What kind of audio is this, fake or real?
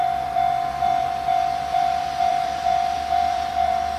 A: fake